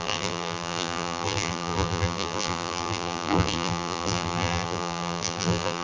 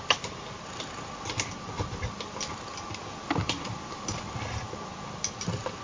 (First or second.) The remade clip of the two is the first